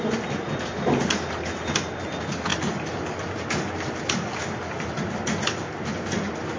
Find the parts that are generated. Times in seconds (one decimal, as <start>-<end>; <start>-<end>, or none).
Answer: none